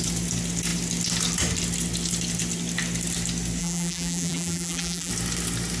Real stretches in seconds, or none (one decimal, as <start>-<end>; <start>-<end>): 0.0-3.6; 5.1-5.8